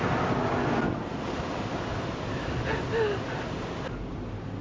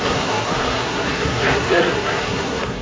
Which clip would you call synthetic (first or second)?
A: second